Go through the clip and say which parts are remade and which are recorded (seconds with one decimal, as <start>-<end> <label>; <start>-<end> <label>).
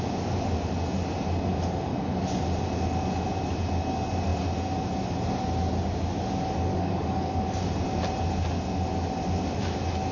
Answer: 0.0-1.9 recorded; 1.9-2.4 remade; 2.4-6.7 recorded; 6.7-7.4 remade; 7.4-10.1 recorded